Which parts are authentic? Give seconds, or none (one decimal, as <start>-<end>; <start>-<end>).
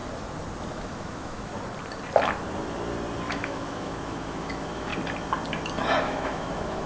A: 0.0-0.7; 1.5-3.3; 4.9-6.0